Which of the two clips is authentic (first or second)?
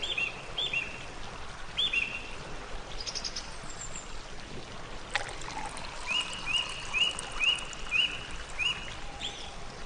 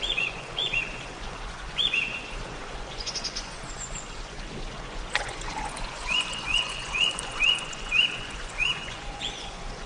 first